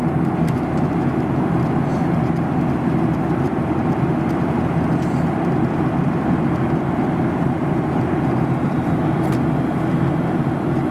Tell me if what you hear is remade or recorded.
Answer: remade